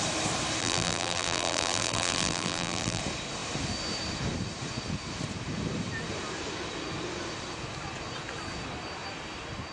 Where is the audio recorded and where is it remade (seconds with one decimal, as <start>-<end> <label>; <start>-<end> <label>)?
0.0-0.6 recorded; 0.6-3.0 remade; 3.0-9.7 recorded